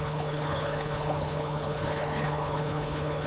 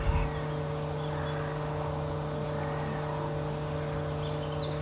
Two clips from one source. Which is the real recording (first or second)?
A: second